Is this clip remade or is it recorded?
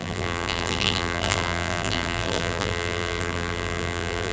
remade